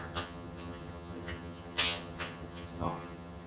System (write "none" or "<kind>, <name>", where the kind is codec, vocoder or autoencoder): vocoder, HiFi-GAN